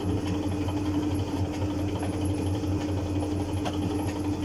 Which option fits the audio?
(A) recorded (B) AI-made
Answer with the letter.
A